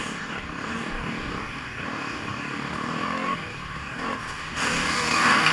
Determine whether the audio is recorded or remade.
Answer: remade